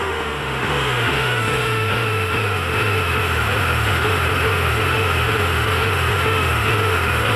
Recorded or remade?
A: remade